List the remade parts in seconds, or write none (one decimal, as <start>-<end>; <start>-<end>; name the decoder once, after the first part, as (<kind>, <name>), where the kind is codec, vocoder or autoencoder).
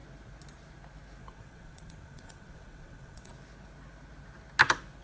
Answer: 1.2-3.3 (vocoder, WaveNeXt)